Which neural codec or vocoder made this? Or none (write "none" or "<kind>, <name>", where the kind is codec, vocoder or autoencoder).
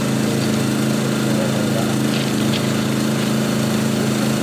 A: none